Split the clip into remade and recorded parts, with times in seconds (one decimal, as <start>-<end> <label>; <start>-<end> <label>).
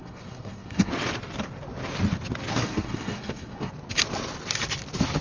0.0-0.9 remade; 0.9-2.5 recorded; 2.5-3.7 remade; 3.7-5.2 recorded